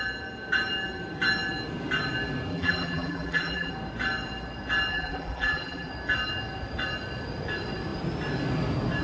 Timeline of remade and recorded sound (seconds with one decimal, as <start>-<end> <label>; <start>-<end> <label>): 0.0-2.5 recorded; 2.5-3.7 remade; 3.7-4.9 recorded; 4.9-5.9 remade; 5.9-9.0 recorded